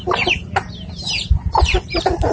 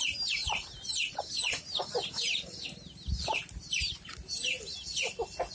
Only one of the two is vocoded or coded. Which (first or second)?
first